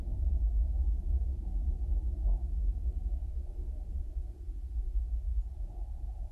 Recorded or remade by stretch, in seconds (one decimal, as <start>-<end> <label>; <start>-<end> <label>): 0.0-6.3 recorded